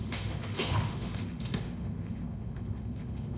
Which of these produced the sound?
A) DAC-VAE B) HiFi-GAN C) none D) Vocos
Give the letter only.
A